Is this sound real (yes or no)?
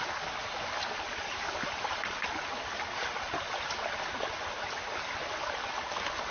yes